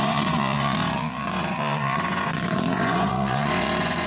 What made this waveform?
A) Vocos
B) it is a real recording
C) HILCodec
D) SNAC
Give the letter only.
A